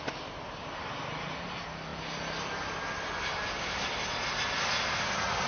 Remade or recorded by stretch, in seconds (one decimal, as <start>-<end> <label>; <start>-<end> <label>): 0.0-5.5 recorded